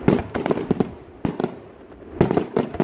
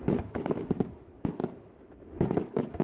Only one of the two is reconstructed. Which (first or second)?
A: second